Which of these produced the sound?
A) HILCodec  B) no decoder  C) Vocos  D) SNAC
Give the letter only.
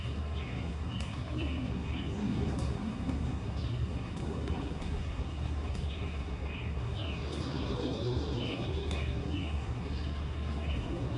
D